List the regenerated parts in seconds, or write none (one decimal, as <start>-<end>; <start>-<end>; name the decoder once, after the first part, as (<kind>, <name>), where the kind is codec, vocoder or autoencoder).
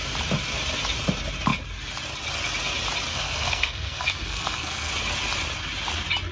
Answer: 3.1-4.9 (codec, SNAC)